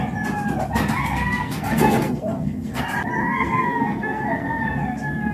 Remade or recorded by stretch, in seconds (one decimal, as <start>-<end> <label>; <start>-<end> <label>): 0.0-1.0 recorded; 1.0-2.8 remade; 2.8-3.2 recorded; 3.2-5.3 remade